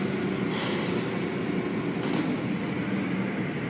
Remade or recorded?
recorded